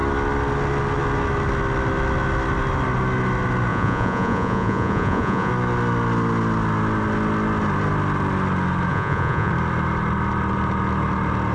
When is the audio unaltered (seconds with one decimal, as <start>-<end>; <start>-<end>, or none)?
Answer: 0.0-3.7; 5.5-8.9; 9.5-11.5